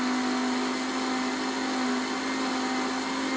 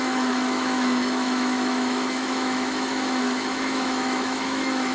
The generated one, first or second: second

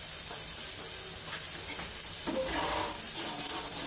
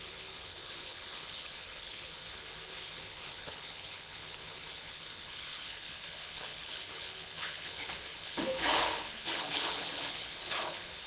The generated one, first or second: second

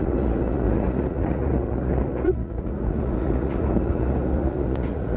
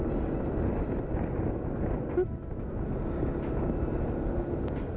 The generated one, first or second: first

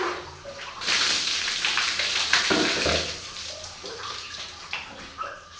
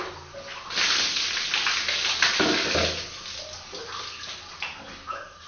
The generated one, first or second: first